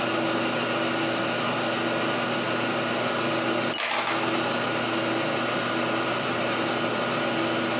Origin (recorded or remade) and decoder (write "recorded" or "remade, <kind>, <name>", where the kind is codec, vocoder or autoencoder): recorded